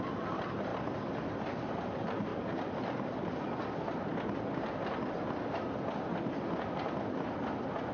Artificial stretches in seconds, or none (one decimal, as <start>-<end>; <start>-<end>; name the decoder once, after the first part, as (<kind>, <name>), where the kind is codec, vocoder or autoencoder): none